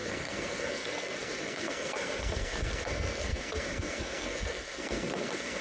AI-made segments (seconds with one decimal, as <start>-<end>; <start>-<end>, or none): 0.0-5.6